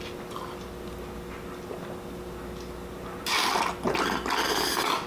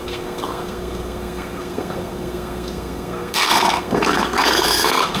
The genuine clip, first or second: first